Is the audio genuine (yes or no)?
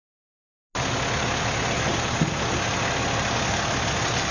yes